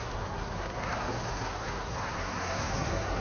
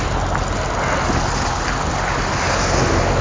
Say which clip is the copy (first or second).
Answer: first